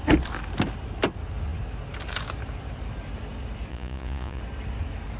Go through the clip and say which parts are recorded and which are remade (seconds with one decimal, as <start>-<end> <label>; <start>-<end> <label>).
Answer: 0.0-3.7 recorded; 3.7-4.4 remade; 4.4-5.2 recorded